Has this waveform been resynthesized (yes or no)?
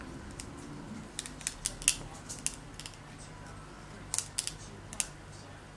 no